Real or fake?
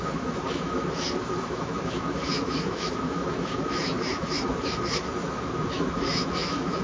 fake